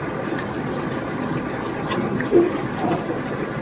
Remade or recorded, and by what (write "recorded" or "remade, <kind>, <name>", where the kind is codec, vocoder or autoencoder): recorded